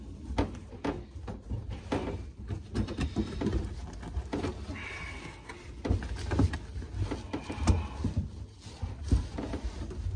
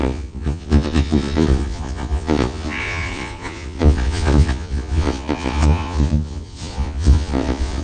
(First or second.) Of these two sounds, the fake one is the second